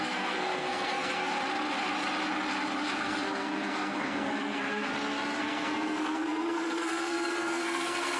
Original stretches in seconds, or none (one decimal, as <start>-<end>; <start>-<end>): 1.3-3.0; 4.9-5.4